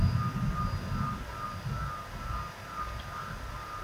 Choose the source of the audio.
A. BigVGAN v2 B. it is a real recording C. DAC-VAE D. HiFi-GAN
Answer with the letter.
B